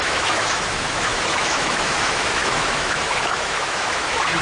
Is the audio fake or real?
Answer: fake